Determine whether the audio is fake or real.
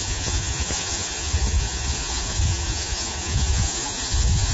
fake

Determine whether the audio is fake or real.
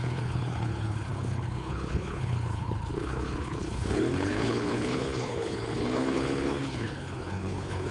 fake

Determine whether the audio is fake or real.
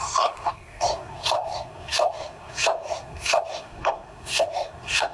fake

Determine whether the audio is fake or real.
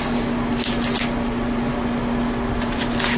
real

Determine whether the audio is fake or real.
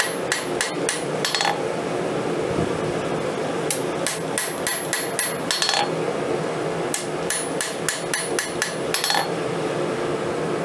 real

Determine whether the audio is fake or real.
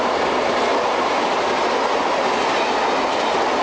real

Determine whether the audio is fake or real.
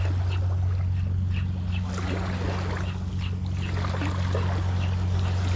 real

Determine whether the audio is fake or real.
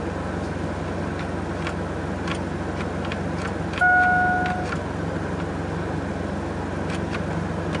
real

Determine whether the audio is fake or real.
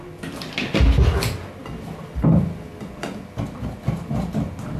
real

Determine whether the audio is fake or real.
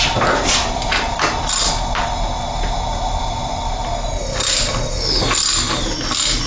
real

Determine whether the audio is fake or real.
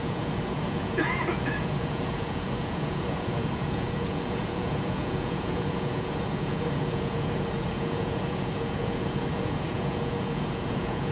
fake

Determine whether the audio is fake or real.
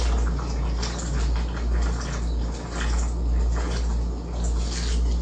real